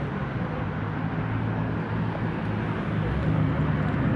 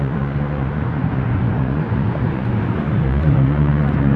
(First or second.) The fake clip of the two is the second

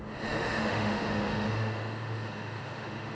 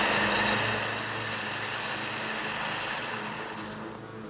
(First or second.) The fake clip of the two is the first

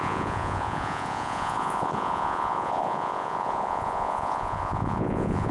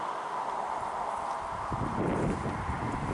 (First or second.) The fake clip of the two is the first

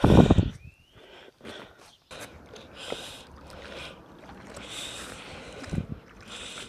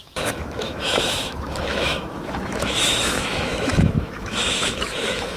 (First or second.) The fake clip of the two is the second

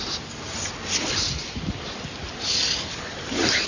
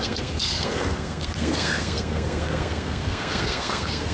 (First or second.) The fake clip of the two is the second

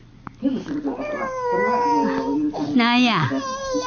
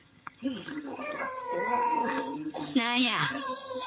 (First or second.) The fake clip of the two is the second